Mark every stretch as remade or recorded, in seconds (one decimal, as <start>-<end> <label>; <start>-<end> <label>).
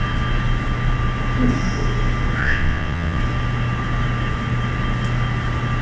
0.0-2.4 recorded; 2.4-3.2 remade; 3.2-5.8 recorded